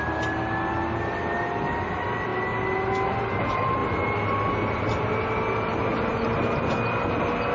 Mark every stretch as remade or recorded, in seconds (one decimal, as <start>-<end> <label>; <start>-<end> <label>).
0.0-7.5 recorded